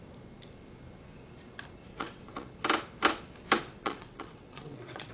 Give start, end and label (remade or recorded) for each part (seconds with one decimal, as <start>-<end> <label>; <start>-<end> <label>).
0.0-1.9 recorded; 1.9-2.5 remade; 2.5-3.8 recorded; 3.8-5.1 remade